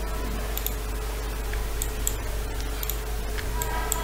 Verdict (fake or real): real